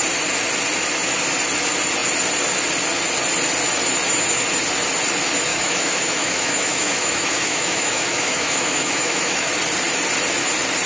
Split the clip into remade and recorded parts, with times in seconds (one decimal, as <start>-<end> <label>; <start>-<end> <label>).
0.0-5.5 recorded; 5.5-9.5 remade; 9.5-10.9 recorded